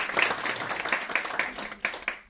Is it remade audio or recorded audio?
recorded